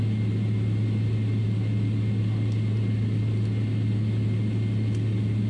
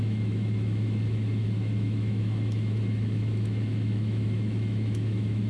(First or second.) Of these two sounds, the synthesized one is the second